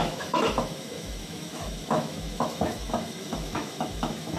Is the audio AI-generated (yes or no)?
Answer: yes